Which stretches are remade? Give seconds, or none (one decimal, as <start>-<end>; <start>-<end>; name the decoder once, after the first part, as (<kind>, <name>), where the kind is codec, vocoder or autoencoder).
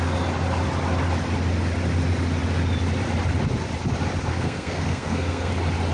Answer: 4.3-5.5 (codec, SNAC)